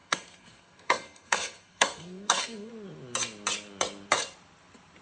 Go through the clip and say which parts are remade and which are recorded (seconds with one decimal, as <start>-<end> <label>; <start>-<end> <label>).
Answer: 0.0-2.7 remade; 2.7-5.0 recorded